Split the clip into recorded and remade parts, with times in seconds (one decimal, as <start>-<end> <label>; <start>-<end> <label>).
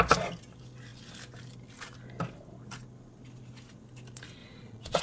0.0-4.4 recorded; 4.4-5.0 remade